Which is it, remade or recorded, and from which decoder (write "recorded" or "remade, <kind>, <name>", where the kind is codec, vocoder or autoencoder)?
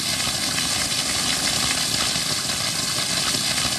recorded